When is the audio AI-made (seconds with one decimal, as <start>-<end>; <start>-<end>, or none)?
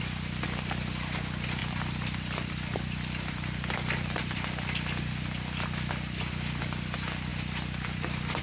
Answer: 1.6-6.6; 7.3-8.4